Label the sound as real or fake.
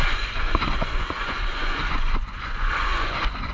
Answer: fake